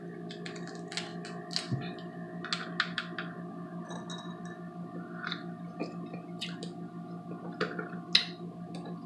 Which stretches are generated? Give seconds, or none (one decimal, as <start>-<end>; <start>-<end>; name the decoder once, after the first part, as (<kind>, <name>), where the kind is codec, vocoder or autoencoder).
none